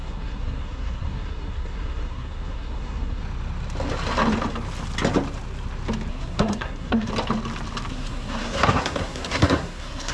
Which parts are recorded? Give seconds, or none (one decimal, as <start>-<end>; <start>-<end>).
3.2-6.1; 7.1-7.9